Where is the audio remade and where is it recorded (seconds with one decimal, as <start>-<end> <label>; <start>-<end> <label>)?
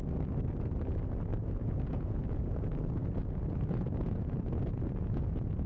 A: 0.0-1.4 recorded; 1.4-2.4 remade; 2.4-3.0 recorded; 3.0-5.7 remade